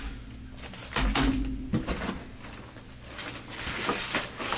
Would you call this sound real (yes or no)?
yes